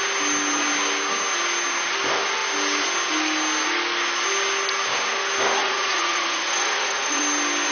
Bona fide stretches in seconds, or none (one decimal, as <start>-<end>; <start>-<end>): 0.0-5.6; 7.2-7.7